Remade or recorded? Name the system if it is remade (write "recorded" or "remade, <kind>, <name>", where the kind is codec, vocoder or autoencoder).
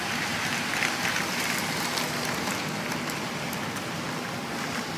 recorded